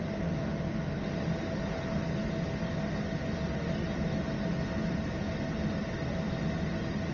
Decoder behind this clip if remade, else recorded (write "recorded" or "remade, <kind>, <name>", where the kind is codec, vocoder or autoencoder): recorded